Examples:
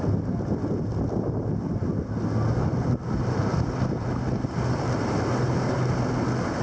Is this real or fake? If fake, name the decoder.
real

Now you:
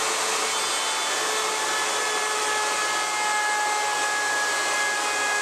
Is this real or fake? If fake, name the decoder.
real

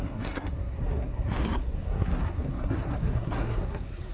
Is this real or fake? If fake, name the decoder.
fake, codec, SNAC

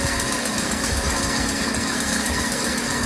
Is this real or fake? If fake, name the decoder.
fake, codec, SNAC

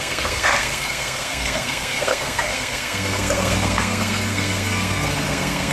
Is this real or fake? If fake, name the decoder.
fake, codec, SNAC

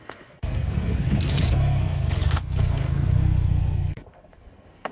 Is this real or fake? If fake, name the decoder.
fake, codec, SNAC